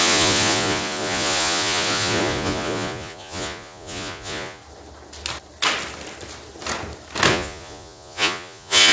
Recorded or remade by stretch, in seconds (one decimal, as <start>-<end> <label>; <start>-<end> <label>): 0.0-4.6 remade; 4.6-7.3 recorded; 7.3-8.9 remade